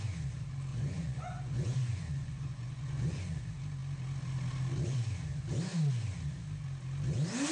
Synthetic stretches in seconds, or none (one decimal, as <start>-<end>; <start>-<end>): 0.7-3.4